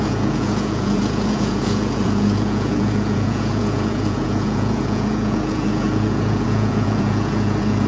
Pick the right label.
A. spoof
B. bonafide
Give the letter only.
A